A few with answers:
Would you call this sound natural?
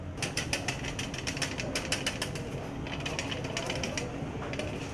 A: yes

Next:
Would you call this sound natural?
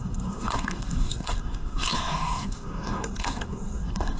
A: no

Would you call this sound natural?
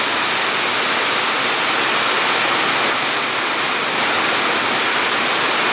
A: yes